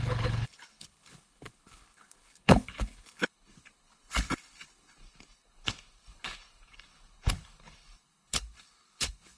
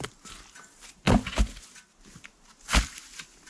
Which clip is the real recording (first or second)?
second